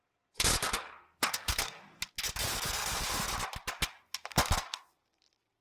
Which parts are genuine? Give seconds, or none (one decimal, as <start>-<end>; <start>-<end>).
0.0-0.6; 1.8-2.5; 3.0-4.3; 4.9-5.6